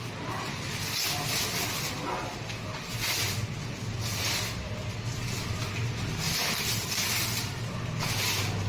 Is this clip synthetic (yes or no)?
no